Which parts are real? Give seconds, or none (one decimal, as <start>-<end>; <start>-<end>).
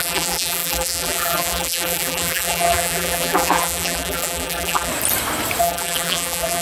4.9-5.6